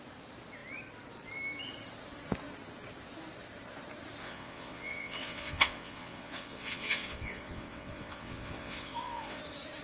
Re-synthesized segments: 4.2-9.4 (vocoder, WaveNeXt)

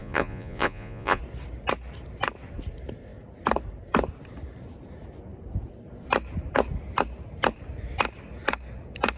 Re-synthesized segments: 0.0-1.2 (vocoder, Vocos)

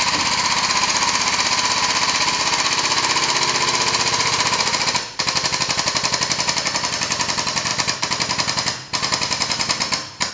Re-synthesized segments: 0.0-7.7 (vocoder, BigVGAN v2)